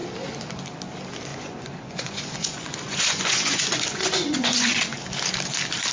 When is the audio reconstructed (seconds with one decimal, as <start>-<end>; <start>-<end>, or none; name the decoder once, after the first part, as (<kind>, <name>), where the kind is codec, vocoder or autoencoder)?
1.3-4.8 (vocoder, Vocos)